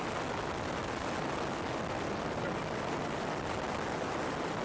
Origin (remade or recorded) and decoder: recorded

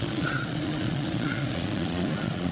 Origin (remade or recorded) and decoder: remade, vocoder, Vocos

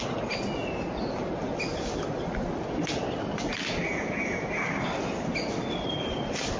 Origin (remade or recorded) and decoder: recorded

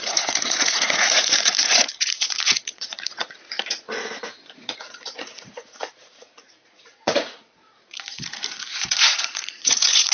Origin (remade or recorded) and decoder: remade, vocoder, Vocos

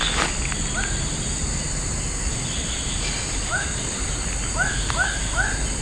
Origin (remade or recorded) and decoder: recorded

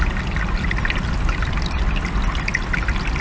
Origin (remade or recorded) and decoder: recorded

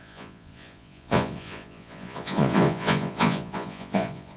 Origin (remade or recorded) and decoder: remade, vocoder, Vocos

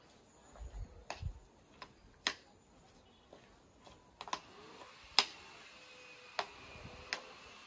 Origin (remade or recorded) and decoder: recorded